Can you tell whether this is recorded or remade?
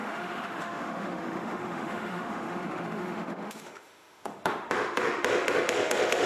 remade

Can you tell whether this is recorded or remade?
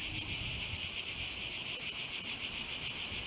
recorded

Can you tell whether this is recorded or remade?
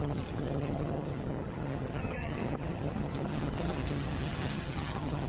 remade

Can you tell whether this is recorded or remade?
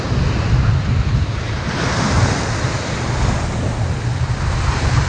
recorded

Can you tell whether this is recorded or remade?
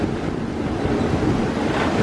recorded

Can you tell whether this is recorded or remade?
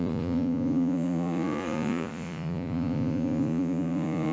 remade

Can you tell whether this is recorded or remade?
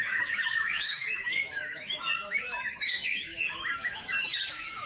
remade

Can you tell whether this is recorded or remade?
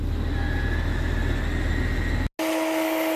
recorded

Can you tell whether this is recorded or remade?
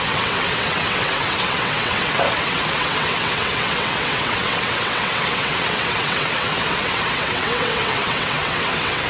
remade